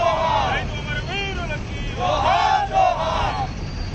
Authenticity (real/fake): real